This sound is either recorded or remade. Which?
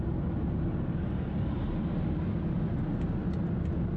recorded